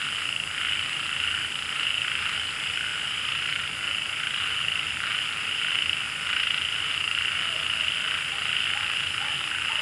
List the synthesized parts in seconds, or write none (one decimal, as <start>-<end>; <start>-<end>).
2.9-3.6